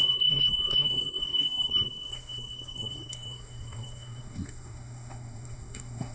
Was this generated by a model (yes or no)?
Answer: yes